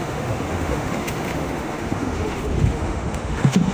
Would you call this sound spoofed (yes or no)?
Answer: yes